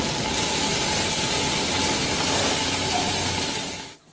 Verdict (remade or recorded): recorded